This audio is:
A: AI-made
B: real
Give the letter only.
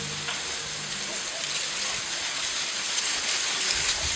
B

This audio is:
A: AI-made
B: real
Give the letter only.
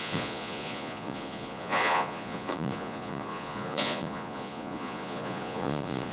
A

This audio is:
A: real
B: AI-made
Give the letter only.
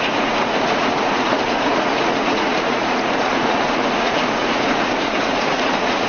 B